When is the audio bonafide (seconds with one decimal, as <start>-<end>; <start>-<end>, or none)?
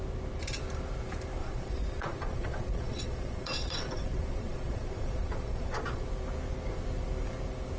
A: 0.0-1.4; 6.0-7.8